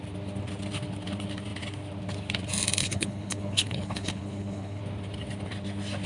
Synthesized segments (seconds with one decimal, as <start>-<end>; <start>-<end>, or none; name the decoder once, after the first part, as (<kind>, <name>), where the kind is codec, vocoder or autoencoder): 2.8-4.8 (codec, HILCodec)